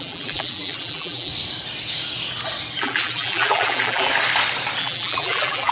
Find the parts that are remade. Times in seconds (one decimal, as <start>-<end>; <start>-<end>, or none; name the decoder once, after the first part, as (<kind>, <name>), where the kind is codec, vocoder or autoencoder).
0.0-1.3 (vocoder, BigVGAN v2); 2.8-4.1; 4.8-5.7